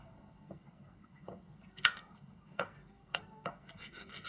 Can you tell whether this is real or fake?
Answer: fake